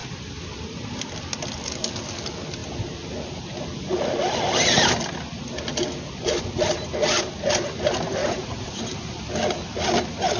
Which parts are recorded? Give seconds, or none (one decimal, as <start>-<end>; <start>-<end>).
0.0-8.2; 8.8-10.4